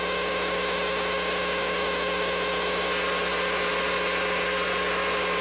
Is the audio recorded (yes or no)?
yes